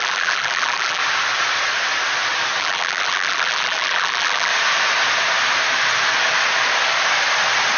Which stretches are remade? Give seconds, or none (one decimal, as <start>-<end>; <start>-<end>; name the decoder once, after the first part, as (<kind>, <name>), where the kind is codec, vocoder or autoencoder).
0.0-1.0 (vocoder, BigVGAN v2); 2.6-4.5

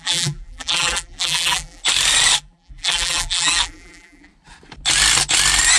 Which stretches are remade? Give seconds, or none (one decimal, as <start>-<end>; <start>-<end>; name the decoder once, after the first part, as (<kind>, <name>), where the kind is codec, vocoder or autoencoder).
0.0-1.8 (vocoder, BigVGAN v2); 2.4-4.3

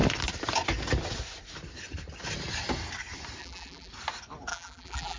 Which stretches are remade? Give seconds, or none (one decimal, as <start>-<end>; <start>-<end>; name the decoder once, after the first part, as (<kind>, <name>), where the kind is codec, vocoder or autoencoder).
3.4-3.9 (vocoder, BigVGAN v2); 4.5-5.2

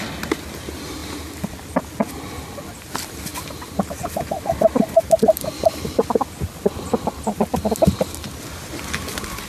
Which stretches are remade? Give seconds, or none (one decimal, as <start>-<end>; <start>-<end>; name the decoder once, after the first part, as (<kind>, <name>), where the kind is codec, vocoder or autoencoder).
none

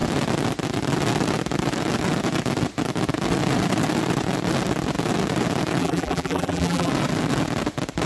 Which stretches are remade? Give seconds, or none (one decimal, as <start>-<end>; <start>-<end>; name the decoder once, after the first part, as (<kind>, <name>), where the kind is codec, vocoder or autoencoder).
5.8-6.9 (vocoder, BigVGAN v2)

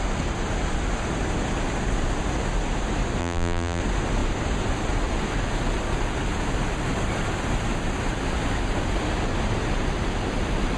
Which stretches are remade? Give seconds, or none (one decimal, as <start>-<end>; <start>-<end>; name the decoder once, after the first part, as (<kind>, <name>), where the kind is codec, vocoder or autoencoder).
3.2-3.8 (vocoder, BigVGAN v2)

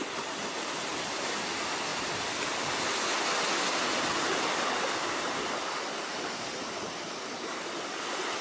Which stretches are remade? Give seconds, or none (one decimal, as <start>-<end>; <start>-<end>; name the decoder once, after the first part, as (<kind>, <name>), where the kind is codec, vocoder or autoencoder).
0.0-1.9 (vocoder, BigVGAN v2); 4.4-8.4